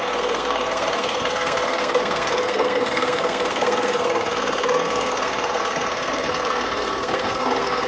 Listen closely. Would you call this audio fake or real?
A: fake